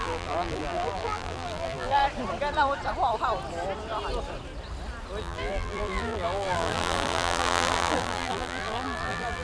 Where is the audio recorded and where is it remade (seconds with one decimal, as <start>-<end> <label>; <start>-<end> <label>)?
0.0-2.0 remade; 2.0-5.2 recorded; 5.2-9.4 remade